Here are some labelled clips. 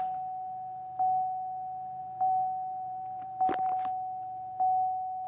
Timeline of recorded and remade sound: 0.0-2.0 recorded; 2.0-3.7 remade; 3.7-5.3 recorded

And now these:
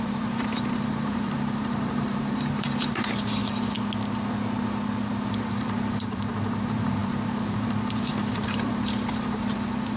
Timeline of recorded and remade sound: 0.0-3.4 remade; 3.4-5.3 recorded; 5.3-10.0 remade

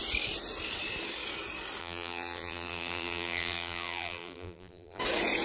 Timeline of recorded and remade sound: 0.0-1.8 recorded; 1.8-5.0 remade; 5.0-5.4 recorded